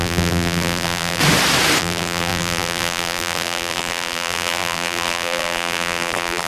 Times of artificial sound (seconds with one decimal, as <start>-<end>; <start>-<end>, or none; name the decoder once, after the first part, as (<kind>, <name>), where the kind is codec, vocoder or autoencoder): 0.0-1.2 (vocoder, BigVGAN v2); 1.8-6.5

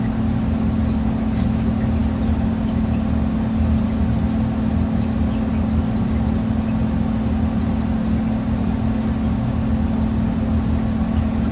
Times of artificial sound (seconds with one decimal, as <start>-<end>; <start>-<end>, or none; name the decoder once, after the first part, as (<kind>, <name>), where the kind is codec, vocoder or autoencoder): none